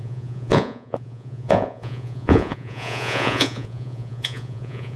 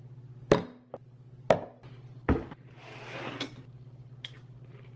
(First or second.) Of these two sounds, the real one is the second